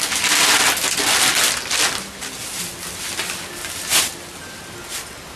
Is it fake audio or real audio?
real